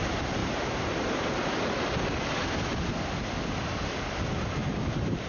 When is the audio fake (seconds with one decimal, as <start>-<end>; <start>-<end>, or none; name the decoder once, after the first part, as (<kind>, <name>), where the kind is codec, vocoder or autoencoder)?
0.4-1.1 (vocoder, BigVGAN v2); 4.6-5.3

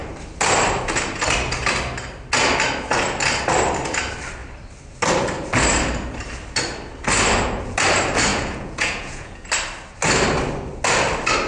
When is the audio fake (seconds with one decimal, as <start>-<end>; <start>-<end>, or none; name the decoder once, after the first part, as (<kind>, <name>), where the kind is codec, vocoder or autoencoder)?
8.3-9.5 (vocoder, Vocos)

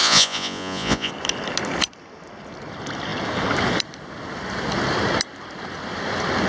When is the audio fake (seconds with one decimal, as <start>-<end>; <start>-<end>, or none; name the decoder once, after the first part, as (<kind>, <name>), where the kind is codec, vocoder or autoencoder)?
0.0-1.1 (vocoder, Vocos)